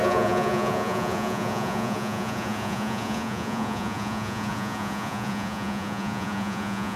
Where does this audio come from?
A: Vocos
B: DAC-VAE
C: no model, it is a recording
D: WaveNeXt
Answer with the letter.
A